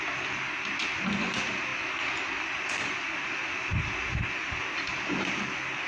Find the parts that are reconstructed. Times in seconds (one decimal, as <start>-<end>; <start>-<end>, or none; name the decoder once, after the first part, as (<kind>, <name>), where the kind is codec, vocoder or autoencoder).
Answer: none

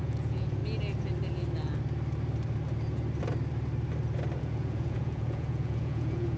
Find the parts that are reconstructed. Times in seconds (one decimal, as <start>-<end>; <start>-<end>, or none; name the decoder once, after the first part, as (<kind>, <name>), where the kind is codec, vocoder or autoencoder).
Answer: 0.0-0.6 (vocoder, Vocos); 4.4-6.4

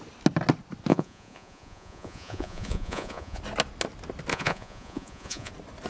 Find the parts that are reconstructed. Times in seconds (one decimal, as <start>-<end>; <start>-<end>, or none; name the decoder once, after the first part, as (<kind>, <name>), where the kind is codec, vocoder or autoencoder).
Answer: 0.9-3.4 (vocoder, Vocos); 4.3-5.5

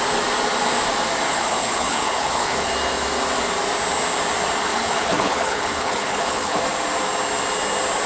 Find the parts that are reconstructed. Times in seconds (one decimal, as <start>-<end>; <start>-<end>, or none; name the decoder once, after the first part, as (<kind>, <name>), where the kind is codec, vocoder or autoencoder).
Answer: 1.3-2.7 (codec, HILCodec); 4.7-6.6

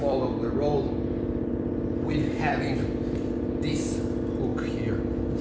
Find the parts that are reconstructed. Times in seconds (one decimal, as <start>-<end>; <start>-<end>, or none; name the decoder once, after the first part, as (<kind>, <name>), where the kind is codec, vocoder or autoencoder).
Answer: 0.0-4.5 (vocoder, BigVGAN v2)

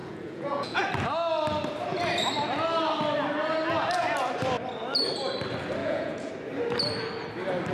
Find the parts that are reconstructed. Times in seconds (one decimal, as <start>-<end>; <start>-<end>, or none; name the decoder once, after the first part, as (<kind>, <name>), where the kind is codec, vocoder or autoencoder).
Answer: 0.0-0.8 (vocoder, Vocos); 5.8-6.3

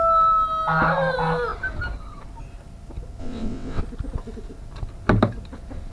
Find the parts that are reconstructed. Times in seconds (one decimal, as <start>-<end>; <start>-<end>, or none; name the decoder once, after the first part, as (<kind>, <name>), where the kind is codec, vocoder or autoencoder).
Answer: 3.2-3.8 (vocoder, WaveNeXt)

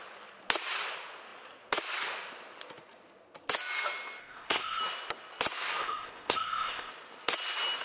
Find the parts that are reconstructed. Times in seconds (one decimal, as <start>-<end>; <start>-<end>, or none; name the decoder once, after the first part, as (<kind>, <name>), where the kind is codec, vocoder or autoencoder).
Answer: 4.2-4.8 (codec, ZipCodec); 5.8-6.9